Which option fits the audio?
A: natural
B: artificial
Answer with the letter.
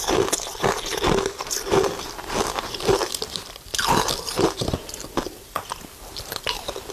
A